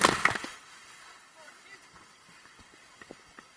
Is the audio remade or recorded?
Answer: recorded